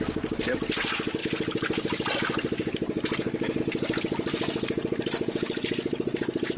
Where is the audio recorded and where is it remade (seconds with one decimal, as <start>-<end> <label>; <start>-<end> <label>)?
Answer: 0.0-6.6 remade